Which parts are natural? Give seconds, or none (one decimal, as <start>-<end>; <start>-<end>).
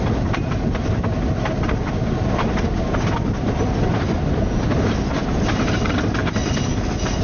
0.0-7.2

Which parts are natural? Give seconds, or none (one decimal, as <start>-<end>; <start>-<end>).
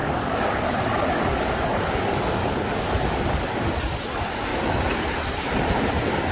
3.8-6.3